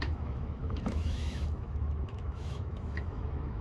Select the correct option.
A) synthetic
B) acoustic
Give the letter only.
A